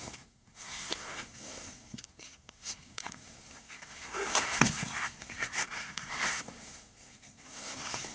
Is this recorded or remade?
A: remade